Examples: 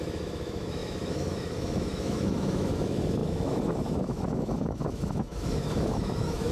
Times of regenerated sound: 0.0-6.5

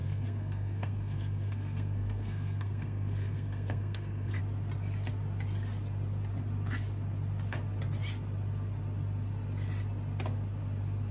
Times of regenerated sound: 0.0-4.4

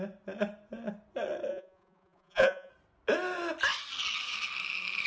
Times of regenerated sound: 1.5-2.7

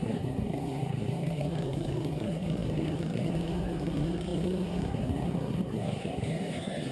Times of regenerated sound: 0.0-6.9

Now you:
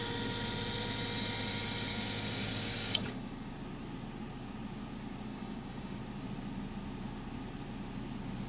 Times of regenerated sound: 1.9-3.5; 5.3-6.0

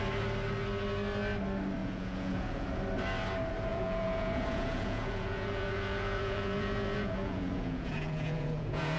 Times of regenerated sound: 1.8-2.8; 3.7-9.0

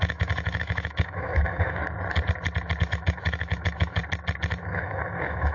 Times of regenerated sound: 0.0-1.8; 2.8-4.0; 4.6-5.5